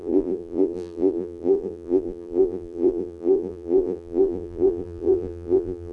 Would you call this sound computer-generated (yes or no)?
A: yes